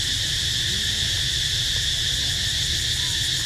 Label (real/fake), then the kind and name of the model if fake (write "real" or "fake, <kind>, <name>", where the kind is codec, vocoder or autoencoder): real